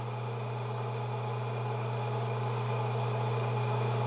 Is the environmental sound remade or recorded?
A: recorded